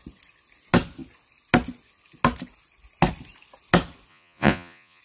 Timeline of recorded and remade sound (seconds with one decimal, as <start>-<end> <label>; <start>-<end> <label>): 0.0-4.1 recorded; 4.1-5.0 remade